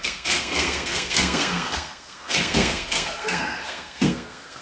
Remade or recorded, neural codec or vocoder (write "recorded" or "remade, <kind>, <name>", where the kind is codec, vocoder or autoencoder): remade, codec, SNAC